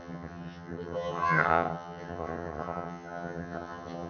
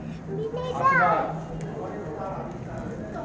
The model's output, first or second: first